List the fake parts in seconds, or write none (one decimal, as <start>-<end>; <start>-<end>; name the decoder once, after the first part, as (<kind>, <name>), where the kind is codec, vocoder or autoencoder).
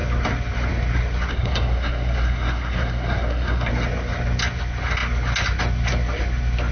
1.3-3.7 (codec, SNAC)